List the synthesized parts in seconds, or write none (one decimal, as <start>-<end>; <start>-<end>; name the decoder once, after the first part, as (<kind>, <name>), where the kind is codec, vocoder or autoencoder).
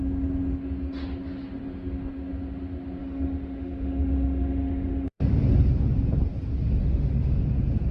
3.0-5.3 (autoencoder, DAC-VAE); 6.8-7.4